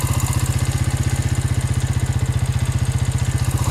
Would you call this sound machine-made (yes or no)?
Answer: no